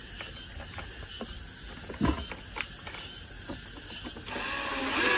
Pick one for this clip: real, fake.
real